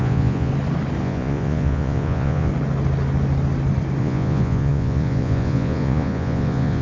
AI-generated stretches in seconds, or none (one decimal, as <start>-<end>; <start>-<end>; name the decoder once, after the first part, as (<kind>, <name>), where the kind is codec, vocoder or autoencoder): 0.0-0.5 (vocoder, Vocos); 1.0-2.5; 4.0-6.8